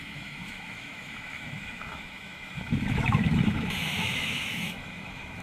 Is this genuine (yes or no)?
no